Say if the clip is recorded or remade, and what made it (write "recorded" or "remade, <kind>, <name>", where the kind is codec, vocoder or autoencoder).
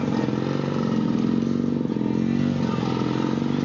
recorded